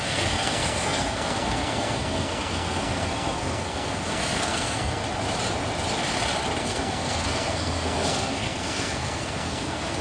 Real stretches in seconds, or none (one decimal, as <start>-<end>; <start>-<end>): 5.0-6.6